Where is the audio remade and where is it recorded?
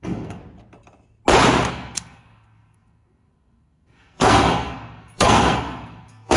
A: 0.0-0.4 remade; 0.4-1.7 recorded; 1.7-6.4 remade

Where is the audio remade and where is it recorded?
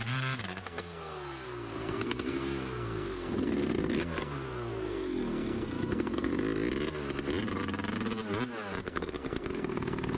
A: 0.0-6.3 remade; 6.3-8.8 recorded; 8.8-10.2 remade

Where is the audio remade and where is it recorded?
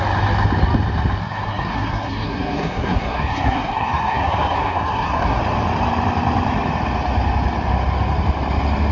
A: 0.0-1.2 recorded; 1.2-5.4 remade; 5.4-8.9 recorded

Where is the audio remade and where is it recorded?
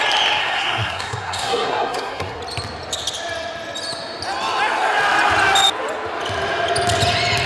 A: 0.0-0.4 recorded; 0.4-2.4 remade; 2.4-7.5 recorded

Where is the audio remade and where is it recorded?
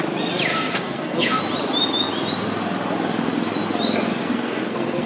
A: 0.0-0.5 recorded; 0.5-1.4 remade; 1.4-4.1 recorded; 4.1-5.1 remade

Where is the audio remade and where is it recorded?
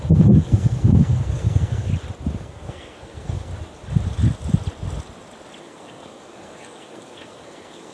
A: 0.0-1.9 remade; 1.9-2.4 recorded; 2.4-3.5 remade; 3.5-5.6 recorded; 5.6-7.9 remade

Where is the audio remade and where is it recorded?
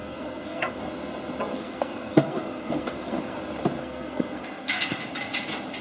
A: 0.0-0.8 remade; 0.8-1.5 recorded; 1.5-3.4 remade; 3.4-3.8 recorded; 3.8-5.0 remade; 5.0-5.8 recorded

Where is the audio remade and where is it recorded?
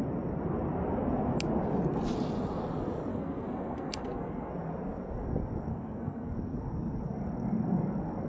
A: 0.0-3.1 recorded; 3.1-4.5 remade; 4.5-5.7 recorded; 5.7-6.3 remade; 6.3-8.3 recorded